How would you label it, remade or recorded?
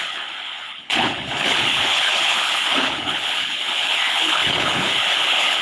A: remade